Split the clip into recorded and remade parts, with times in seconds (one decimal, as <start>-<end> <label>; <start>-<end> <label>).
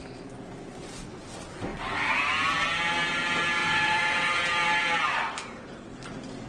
0.0-3.6 recorded; 3.6-4.4 remade; 4.4-6.5 recorded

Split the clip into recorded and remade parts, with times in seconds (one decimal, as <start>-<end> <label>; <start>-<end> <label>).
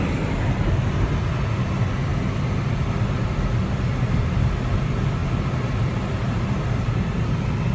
0.0-7.7 recorded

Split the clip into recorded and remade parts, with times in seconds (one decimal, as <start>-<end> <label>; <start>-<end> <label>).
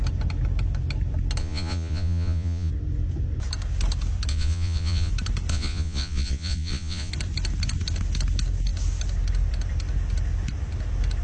0.0-1.4 recorded; 1.4-2.7 remade; 2.7-4.3 recorded; 4.3-5.1 remade; 5.1-5.5 recorded; 5.5-7.1 remade; 7.1-11.2 recorded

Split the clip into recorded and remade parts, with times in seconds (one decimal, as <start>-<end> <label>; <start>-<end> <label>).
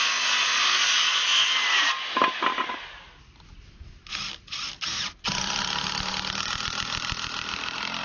0.0-8.0 recorded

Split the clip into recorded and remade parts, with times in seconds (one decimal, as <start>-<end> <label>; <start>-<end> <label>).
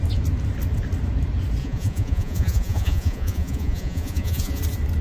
0.0-1.6 recorded; 1.6-4.6 remade; 4.6-5.0 recorded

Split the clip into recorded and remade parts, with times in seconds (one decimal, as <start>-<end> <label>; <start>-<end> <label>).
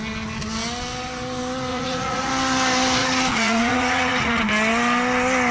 0.0-1.7 recorded; 1.7-2.3 remade; 2.3-3.0 recorded; 3.0-4.4 remade; 4.4-5.5 recorded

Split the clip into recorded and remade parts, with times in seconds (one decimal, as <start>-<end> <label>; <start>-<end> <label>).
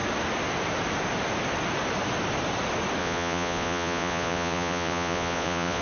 0.0-3.0 recorded; 3.0-5.8 remade